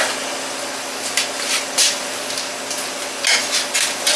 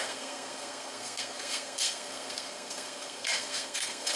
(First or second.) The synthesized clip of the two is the second